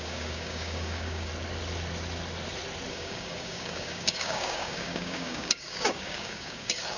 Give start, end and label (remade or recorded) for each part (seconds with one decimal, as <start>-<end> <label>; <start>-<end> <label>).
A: 0.0-1.3 remade; 1.3-2.9 recorded; 2.9-7.0 remade